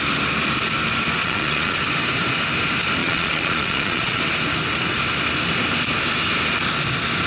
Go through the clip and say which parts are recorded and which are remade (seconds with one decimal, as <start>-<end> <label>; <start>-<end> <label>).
0.0-1.2 recorded; 1.2-1.8 remade; 1.8-3.0 recorded; 3.0-4.2 remade; 4.2-7.3 recorded